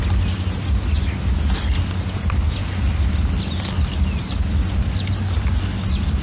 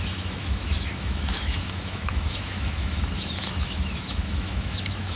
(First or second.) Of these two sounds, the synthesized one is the second